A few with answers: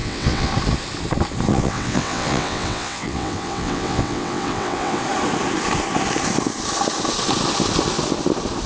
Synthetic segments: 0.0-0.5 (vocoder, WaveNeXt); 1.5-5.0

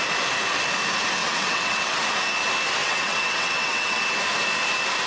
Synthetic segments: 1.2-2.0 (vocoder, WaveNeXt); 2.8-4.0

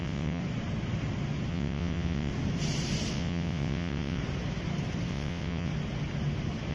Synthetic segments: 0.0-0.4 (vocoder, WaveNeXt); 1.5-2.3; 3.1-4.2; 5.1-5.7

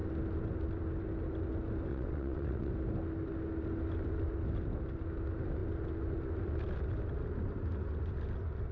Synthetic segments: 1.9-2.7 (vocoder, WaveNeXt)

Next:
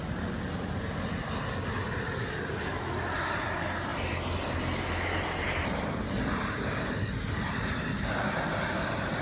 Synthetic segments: none